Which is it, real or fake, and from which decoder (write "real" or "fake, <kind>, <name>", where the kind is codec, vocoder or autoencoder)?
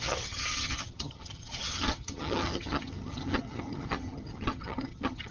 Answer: fake, vocoder, HiFi-GAN